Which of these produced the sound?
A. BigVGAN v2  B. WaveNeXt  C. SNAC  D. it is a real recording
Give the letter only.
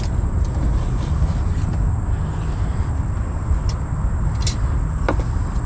D